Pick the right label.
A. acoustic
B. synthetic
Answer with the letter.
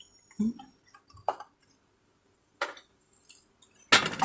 A